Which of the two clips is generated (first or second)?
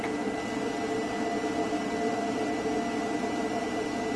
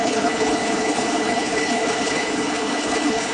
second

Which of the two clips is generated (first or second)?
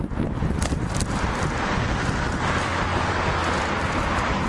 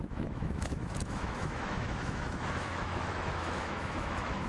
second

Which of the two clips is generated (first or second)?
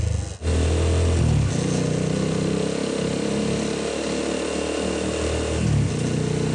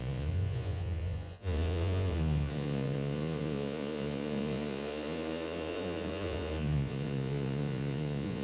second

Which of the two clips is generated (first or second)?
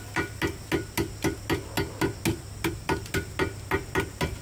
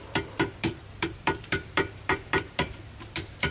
second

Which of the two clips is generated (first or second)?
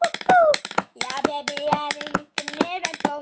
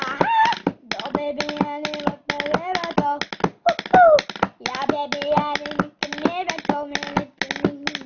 first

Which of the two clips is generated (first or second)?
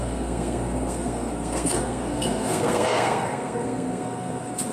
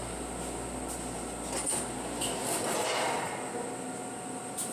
first